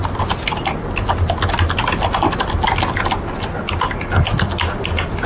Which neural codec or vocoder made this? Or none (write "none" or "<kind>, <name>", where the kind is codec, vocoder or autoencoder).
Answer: none